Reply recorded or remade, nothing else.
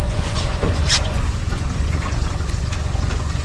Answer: remade